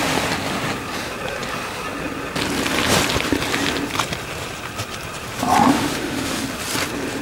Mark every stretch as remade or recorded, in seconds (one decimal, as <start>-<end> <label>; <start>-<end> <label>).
0.0-5.6 recorded; 5.6-6.4 remade; 6.4-7.2 recorded